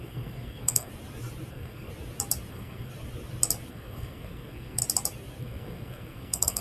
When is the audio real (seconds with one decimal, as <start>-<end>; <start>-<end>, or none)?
0.9-1.5; 1.9-2.5; 2.9-3.7; 4.8-5.4